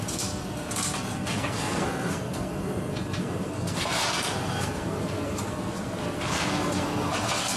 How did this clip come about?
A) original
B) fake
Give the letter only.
B